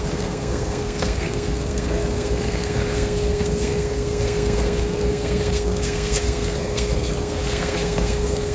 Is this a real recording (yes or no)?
no